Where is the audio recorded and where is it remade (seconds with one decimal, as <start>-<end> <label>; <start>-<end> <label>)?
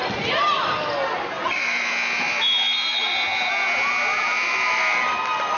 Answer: 0.0-5.6 recorded